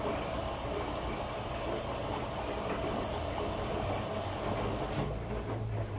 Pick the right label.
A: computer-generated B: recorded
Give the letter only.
B